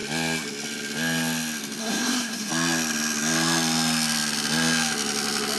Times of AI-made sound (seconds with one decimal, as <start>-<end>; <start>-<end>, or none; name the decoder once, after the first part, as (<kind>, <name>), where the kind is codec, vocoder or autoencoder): 1.8-2.5 (codec, SNAC)